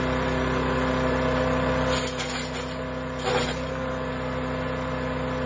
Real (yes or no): yes